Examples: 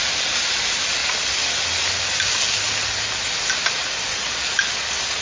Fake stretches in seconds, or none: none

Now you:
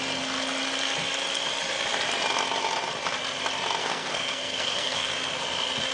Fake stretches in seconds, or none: 3.8-5.1 (codec, SNAC)

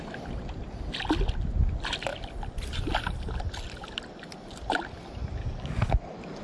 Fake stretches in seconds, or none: 5.4-6.0 (codec, DAC)